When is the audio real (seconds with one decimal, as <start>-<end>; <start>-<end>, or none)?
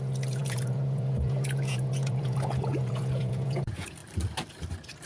4.0-5.1